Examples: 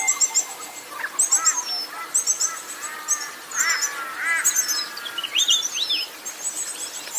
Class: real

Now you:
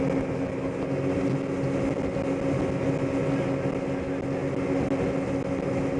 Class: real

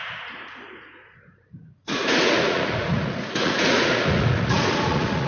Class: fake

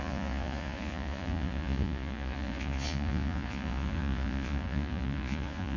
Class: fake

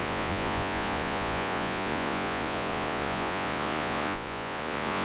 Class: fake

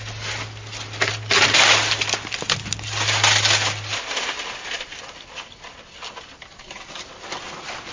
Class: real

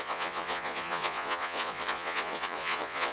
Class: fake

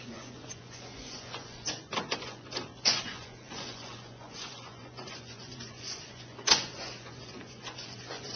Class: fake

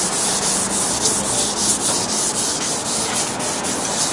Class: real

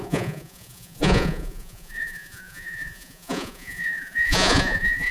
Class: fake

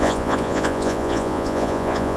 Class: fake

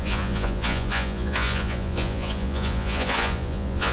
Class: fake